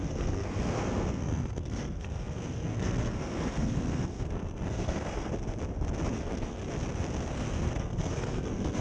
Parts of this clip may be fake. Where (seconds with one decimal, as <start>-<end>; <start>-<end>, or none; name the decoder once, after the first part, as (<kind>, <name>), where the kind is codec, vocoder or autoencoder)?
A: 0.0-5.3 (codec, SNAC); 6.1-6.6; 7.3-8.8